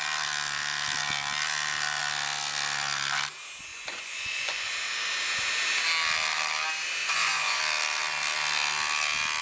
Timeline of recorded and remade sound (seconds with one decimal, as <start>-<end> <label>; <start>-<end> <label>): 0.0-3.7 recorded; 3.7-4.7 remade; 4.7-7.0 recorded; 7.0-7.6 remade; 7.6-9.4 recorded